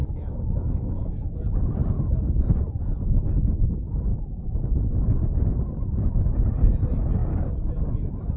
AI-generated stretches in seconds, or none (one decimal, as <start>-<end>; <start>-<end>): 0.0-1.1